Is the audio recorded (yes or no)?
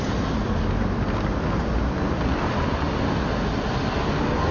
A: yes